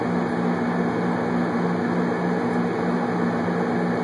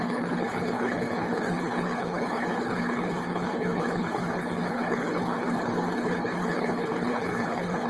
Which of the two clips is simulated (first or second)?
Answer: second